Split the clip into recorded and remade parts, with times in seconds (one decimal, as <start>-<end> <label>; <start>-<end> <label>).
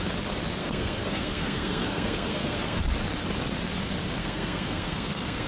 0.0-0.6 recorded; 0.6-2.8 remade; 2.8-4.2 recorded; 4.2-5.5 remade